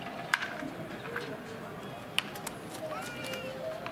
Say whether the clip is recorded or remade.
recorded